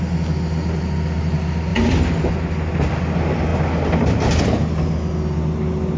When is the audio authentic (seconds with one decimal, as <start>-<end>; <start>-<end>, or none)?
0.0-6.0